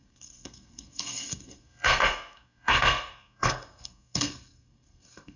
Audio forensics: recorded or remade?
remade